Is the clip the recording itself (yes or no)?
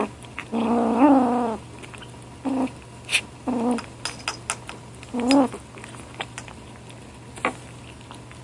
yes